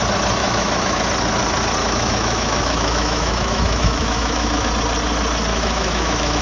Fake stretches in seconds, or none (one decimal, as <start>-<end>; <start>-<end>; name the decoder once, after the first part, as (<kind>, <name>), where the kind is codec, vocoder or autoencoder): 0.4-1.0 (autoencoder, DAC-VAE); 1.8-4.7; 5.5-6.4

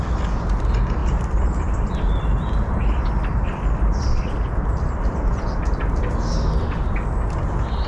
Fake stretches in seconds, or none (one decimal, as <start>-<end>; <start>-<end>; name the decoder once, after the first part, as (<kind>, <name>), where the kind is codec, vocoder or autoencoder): none

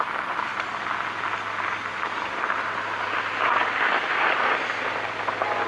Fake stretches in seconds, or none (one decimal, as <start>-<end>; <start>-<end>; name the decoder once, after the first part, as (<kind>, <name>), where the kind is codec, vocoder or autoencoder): none

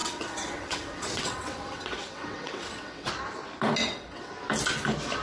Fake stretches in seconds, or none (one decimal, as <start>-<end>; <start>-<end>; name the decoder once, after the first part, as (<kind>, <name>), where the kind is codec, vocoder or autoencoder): 0.0-3.1 (vocoder, WaveNeXt); 3.8-4.3

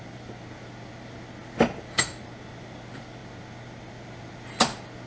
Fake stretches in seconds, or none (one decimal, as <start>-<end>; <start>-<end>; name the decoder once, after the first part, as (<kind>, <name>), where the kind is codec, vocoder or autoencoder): none

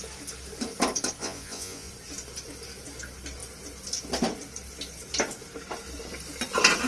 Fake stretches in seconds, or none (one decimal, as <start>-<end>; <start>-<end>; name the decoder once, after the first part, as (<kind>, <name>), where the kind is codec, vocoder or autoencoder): 1.2-1.9 (vocoder, Vocos)